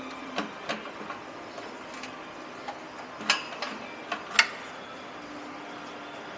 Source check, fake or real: real